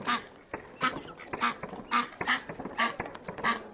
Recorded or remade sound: recorded